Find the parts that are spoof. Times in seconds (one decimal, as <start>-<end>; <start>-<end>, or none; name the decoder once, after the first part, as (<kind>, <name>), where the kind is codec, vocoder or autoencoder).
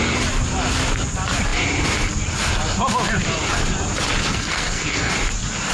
4.2-5.1 (codec, SNAC)